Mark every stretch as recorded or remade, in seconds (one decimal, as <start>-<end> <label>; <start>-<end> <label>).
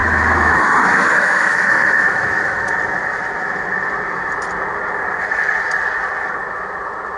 0.0-2.7 remade; 2.7-7.2 recorded